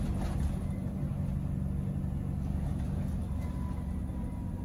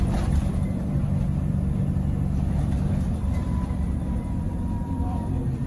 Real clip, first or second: first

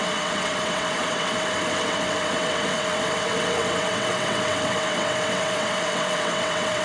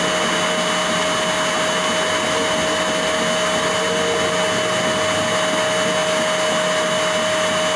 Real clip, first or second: second